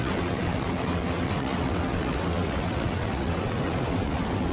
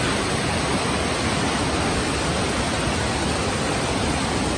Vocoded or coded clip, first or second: first